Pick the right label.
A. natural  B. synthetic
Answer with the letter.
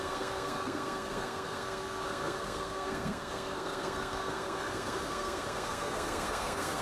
B